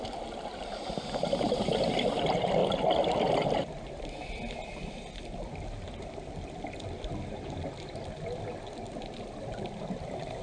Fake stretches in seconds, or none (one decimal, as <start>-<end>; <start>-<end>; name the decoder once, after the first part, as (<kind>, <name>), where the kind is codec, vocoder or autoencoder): none